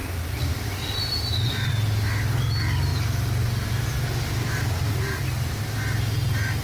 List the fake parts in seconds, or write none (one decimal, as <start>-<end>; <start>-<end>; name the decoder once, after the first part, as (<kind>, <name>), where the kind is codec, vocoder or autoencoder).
0.0-1.7 (vocoder, BigVGAN v2); 2.9-5.2